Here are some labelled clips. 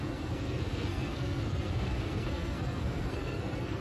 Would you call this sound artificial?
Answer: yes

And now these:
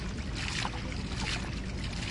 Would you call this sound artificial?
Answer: no